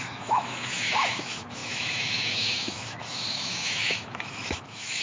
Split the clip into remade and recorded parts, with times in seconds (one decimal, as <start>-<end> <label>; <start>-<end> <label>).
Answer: 0.0-5.0 remade